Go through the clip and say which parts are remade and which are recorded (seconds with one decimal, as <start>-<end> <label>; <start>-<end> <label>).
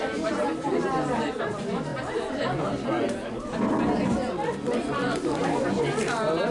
0.0-6.5 recorded